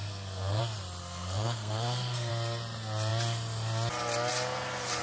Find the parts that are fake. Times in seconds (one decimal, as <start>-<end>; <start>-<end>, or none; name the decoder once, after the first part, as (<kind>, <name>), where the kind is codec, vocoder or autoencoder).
0.0-0.6 (codec, SNAC); 1.0-2.3